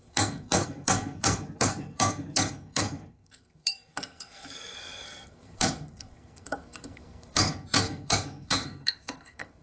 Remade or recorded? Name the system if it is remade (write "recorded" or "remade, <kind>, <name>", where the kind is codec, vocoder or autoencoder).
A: remade, codec, SNAC